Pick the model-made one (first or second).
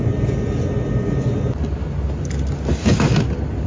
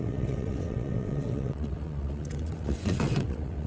second